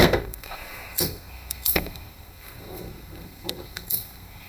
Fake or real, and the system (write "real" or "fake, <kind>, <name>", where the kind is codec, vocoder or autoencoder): fake, codec, SNAC